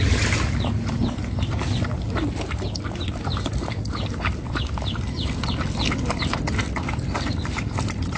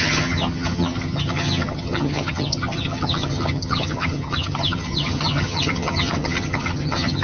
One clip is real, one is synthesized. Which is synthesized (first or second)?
second